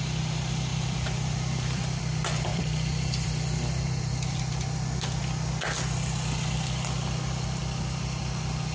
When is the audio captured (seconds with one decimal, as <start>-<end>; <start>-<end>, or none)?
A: 0.0-0.7; 2.0-2.5; 5.2-8.7